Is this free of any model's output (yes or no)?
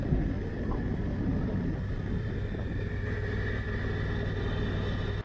yes